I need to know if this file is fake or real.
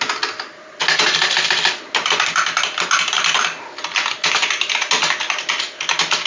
real